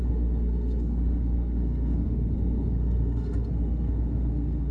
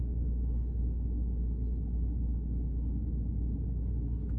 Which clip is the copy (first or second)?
first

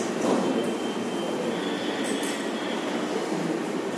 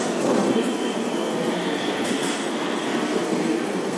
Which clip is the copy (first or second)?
second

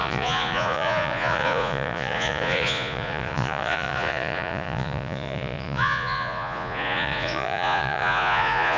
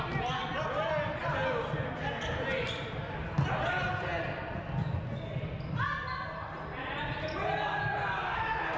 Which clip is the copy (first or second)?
first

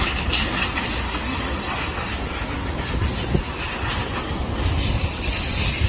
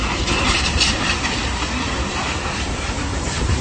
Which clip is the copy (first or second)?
second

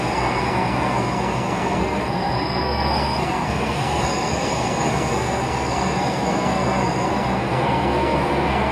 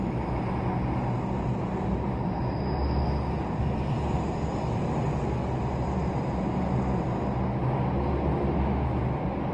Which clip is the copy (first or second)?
first